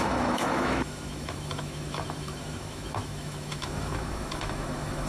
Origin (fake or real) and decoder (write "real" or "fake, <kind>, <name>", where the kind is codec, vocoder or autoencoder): fake, autoencoder, DAC-VAE